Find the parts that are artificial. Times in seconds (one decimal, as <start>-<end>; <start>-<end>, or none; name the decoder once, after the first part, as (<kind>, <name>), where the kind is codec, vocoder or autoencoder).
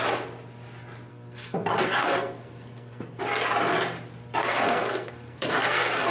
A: 1.1-3.2 (codec, SNAC); 4.4-6.1